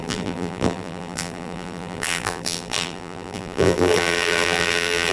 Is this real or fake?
fake